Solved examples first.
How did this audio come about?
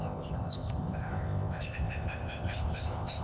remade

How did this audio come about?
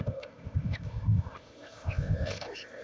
remade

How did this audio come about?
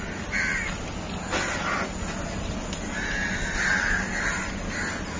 recorded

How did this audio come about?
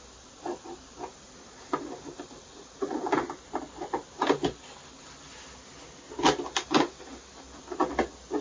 recorded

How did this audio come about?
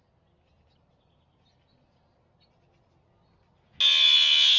recorded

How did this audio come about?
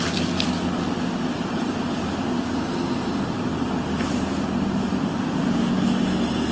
recorded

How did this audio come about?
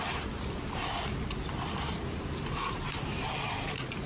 recorded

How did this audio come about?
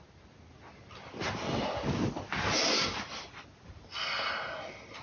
recorded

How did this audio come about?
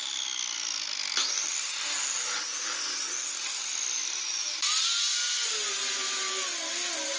recorded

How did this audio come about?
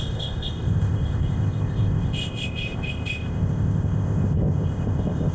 remade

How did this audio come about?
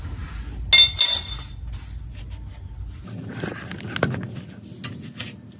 recorded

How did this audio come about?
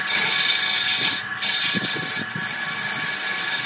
recorded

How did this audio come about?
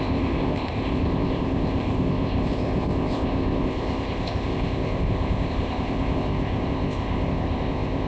remade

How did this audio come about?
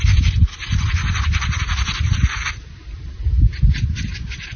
recorded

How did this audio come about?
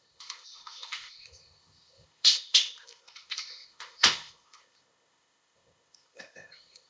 remade